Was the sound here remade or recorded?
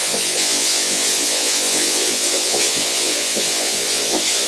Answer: remade